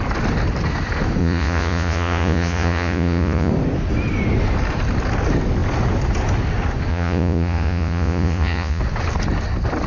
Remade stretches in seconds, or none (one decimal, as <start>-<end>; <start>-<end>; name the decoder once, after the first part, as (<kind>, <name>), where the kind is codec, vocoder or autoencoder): 1.2-3.5 (vocoder, Vocos); 6.9-8.8